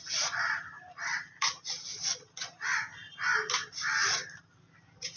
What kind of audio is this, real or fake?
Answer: real